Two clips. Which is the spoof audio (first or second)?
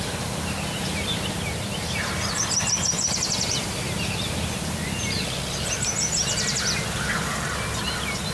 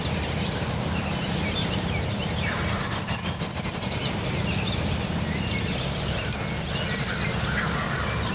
second